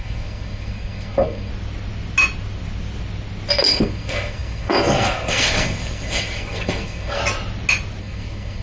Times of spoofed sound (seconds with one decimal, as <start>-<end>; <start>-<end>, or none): 0.0-1.5; 3.7-7.2; 8.0-8.6